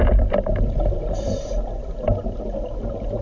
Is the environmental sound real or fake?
real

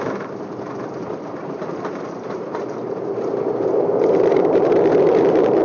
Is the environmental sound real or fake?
fake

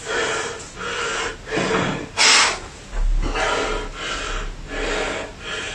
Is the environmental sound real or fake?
real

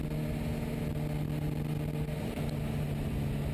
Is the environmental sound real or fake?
real